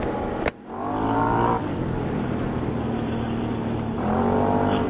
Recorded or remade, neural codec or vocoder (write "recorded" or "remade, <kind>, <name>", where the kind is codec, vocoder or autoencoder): recorded